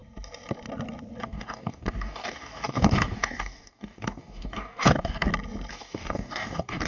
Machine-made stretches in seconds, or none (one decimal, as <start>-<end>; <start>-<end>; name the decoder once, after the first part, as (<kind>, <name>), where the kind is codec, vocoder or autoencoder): 1.2-5.3 (codec, DAC); 5.7-6.9